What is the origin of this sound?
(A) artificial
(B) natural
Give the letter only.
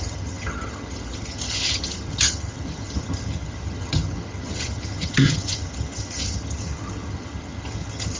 A